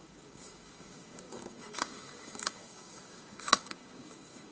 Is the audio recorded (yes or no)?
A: no